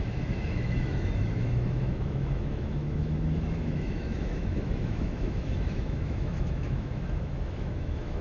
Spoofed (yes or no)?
yes